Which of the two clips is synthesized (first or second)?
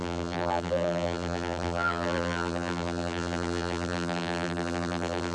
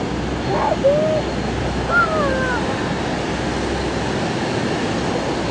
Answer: first